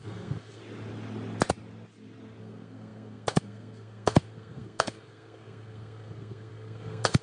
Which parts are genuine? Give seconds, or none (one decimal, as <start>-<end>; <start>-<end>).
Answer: 0.6-2.4

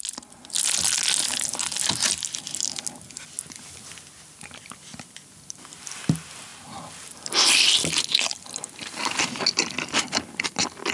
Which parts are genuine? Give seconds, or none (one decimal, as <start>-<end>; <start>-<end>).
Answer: 0.0-10.9